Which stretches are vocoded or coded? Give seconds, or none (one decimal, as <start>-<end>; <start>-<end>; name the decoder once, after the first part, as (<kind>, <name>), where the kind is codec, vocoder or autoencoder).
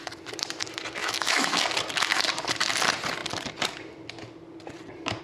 1.0-1.6 (autoencoder, DAC-VAE)